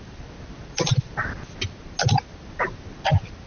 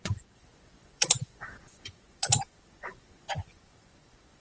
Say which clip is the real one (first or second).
first